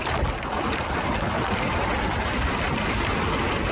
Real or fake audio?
real